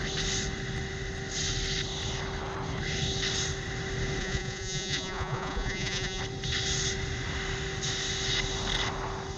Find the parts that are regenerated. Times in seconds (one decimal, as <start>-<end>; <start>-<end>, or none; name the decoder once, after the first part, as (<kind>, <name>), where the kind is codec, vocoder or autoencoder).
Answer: 4.2-6.2 (vocoder, Vocos)